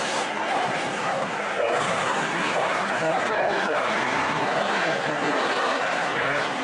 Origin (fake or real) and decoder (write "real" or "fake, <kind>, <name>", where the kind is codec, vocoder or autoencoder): fake, codec, SNAC